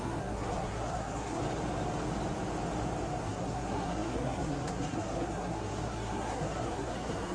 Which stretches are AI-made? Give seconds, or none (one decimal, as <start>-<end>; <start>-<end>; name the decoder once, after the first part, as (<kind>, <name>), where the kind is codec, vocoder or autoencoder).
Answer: 0.0-1.4 (codec, SNAC); 3.2-7.3